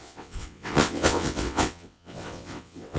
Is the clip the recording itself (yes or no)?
no